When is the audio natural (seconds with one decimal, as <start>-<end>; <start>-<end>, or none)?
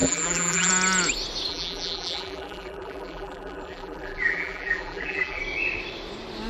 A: 0.7-1.5; 5.4-6.5